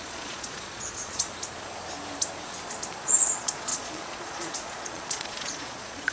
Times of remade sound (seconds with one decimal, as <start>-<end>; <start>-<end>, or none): 0.0-1.3; 3.0-6.1